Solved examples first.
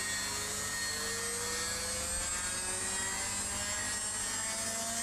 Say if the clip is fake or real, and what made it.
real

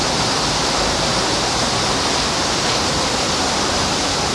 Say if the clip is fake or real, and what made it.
real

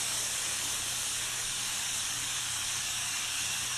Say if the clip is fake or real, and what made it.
fake, codec, DAC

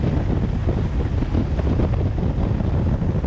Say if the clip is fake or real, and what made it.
real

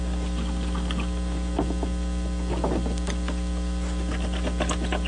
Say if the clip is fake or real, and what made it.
real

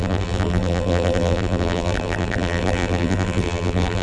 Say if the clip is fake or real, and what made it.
fake, vocoder, BigVGAN v2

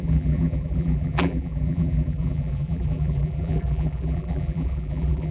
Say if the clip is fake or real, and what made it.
fake, vocoder, BigVGAN v2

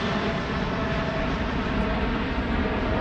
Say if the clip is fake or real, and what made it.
fake, vocoder, BigVGAN v2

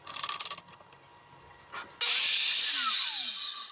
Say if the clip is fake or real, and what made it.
real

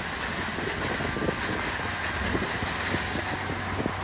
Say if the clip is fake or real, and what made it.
real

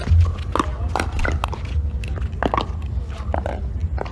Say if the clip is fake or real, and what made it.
real